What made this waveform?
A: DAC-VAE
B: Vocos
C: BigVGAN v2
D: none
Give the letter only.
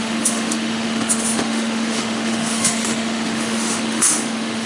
A